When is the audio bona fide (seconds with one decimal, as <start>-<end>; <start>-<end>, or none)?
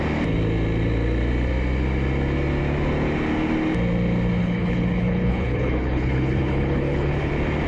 0.0-4.4; 7.3-7.7